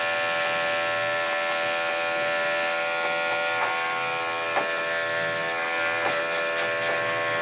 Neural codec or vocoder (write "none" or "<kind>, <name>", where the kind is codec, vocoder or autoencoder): none